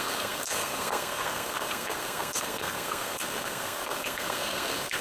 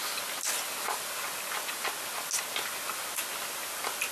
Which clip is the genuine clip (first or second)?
second